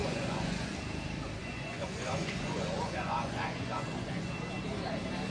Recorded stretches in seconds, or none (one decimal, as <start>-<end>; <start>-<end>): 0.7-1.4; 4.3-5.3